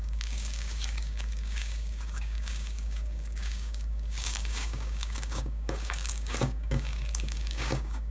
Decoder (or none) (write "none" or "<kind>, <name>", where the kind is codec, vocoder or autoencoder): codec, DAC